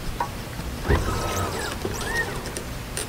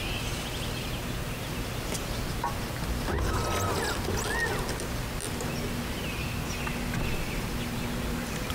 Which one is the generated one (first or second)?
first